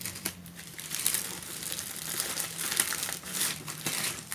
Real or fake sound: fake